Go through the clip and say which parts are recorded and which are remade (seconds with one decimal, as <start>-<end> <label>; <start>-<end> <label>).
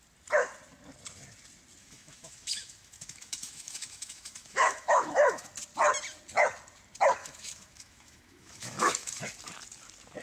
0.0-1.8 recorded; 1.8-5.5 remade; 5.5-7.2 recorded; 7.2-9.2 remade; 9.2-10.2 recorded